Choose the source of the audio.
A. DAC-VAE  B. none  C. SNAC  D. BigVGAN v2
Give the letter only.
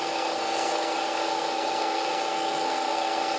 C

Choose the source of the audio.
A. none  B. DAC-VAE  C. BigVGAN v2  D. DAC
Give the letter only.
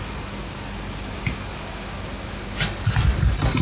A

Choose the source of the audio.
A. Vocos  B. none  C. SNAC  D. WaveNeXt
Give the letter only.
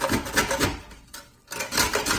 B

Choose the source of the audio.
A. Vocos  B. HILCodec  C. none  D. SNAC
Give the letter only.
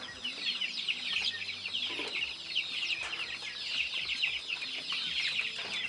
C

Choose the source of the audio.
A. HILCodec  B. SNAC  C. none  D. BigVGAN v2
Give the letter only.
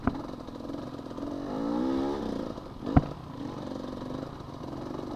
C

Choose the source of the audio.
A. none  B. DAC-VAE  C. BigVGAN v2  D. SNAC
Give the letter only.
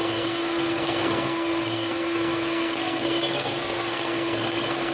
D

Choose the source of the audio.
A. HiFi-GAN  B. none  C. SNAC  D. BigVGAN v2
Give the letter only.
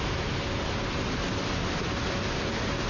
B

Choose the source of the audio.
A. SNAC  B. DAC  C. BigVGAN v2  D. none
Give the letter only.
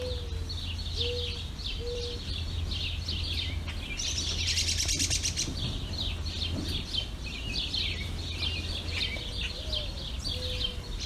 D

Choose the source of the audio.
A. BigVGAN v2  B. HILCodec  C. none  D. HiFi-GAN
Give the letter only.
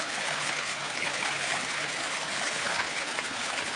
B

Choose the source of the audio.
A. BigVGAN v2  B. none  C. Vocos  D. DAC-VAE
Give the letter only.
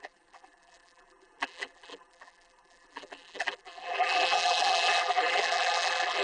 A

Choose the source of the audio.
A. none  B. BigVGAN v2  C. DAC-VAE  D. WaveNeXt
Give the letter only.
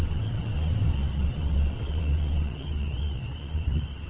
D